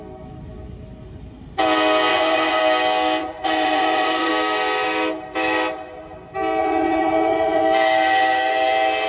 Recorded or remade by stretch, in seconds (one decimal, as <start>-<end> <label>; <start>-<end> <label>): 0.0-2.1 recorded; 2.1-2.6 remade; 2.6-3.2 recorded; 3.2-4.3 remade; 4.3-6.6 recorded; 6.6-7.6 remade; 7.6-9.1 recorded